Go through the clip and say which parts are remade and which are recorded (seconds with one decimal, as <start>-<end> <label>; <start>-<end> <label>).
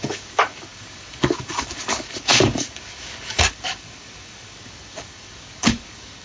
0.0-6.2 remade